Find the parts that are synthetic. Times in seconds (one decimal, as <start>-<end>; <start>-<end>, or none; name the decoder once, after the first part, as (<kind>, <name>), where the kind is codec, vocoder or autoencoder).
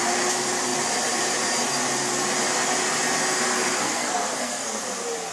3.7-4.8 (codec, SNAC)